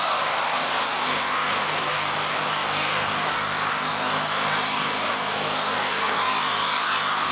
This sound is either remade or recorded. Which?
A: remade